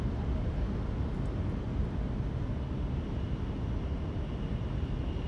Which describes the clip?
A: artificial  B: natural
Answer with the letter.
B